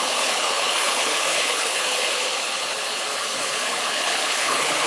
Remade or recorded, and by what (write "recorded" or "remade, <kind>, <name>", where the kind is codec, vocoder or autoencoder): remade, codec, HILCodec